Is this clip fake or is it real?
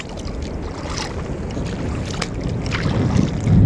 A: real